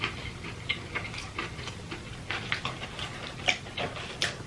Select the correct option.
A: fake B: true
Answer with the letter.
B